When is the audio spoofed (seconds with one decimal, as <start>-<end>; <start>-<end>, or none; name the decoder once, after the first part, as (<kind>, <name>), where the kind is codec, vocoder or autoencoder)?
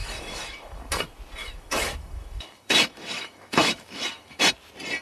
0.0-0.9 (autoencoder, DAC-VAE); 1.4-4.4